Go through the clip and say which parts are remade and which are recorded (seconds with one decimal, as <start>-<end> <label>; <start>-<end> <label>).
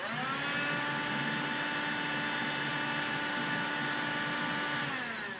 0.0-5.4 recorded